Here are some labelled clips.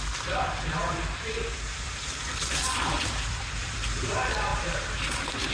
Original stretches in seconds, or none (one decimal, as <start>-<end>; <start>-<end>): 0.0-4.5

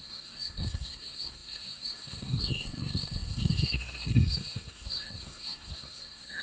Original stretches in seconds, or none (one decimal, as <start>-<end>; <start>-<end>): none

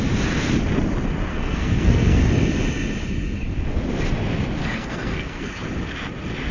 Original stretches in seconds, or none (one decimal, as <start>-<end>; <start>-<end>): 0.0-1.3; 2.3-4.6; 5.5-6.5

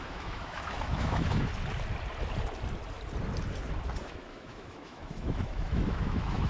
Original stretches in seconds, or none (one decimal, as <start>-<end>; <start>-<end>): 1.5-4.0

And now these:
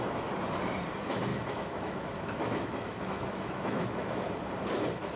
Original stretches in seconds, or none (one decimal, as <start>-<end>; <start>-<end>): 0.0-1.3; 4.3-5.2

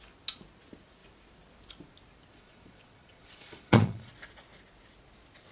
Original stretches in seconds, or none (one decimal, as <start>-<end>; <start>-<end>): 0.0-2.3; 4.1-5.5